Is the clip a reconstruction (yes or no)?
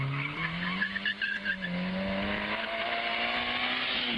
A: no